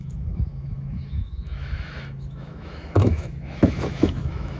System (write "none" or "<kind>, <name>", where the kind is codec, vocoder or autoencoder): autoencoder, DAC-VAE